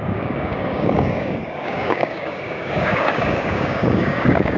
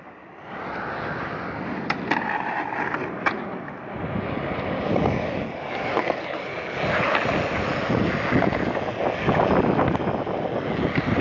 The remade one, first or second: first